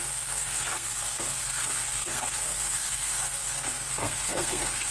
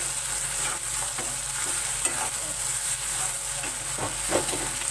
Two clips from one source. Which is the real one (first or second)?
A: second